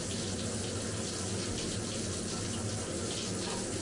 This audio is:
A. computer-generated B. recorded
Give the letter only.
B